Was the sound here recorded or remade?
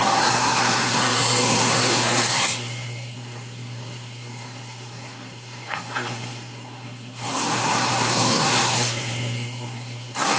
remade